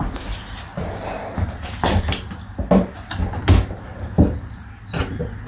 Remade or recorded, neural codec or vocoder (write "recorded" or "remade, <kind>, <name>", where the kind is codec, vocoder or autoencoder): recorded